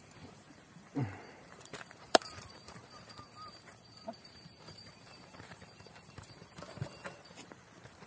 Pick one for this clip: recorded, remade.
remade